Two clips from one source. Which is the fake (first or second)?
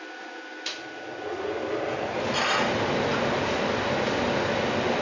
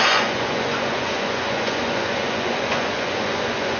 second